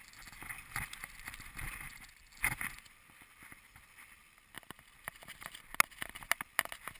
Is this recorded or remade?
recorded